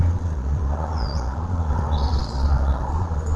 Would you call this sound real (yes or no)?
no